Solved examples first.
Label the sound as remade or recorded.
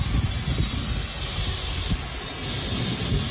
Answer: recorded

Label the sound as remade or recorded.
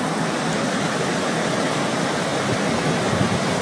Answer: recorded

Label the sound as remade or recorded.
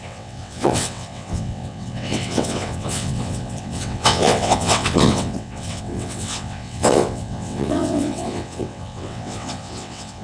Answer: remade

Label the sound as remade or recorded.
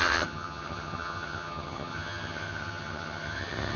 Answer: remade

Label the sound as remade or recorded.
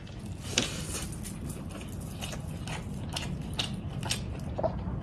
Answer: recorded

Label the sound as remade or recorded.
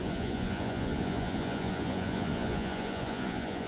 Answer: remade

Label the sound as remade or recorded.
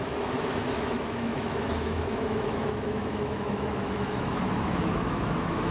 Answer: remade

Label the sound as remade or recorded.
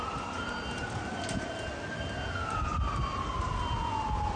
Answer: recorded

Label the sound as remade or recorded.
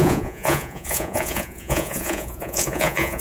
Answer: remade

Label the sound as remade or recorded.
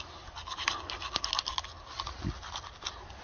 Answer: recorded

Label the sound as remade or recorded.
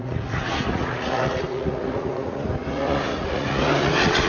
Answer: remade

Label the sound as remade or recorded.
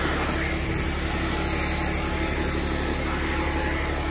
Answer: recorded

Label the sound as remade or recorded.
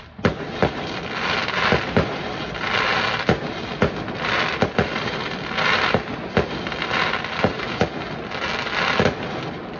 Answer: recorded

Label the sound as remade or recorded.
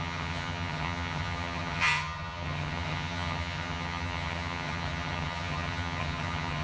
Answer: remade